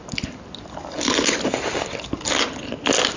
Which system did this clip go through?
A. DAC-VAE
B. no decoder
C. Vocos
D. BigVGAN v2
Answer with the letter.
B